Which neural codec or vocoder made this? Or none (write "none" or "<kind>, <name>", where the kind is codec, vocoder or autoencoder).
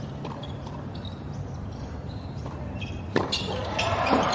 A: vocoder, BigVGAN v2